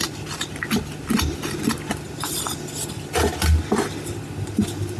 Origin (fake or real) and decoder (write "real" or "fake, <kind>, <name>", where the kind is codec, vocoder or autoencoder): real